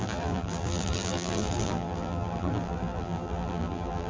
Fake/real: fake